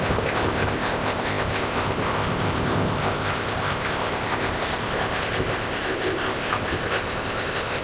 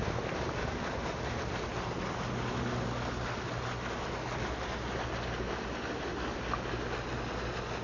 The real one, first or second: second